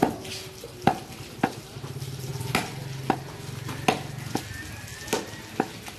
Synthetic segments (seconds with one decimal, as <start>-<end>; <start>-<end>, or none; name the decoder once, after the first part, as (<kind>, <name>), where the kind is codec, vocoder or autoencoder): none